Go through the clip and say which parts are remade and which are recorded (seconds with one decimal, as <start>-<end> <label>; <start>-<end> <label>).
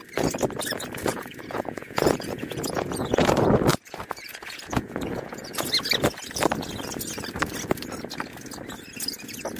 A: 0.0-1.1 recorded; 1.1-3.3 remade; 3.3-3.7 recorded; 3.7-5.7 remade; 5.7-9.6 recorded